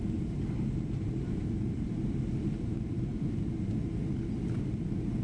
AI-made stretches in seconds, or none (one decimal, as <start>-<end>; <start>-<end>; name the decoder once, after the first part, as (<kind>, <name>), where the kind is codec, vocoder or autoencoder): 1.4-2.0 (vocoder, BigVGAN v2)